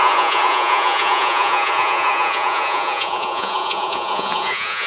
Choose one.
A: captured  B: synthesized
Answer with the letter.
B